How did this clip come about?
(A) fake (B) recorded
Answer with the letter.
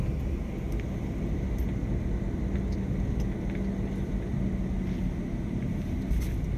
B